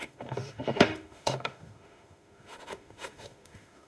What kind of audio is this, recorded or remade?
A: remade